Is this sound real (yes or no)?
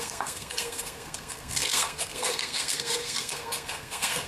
no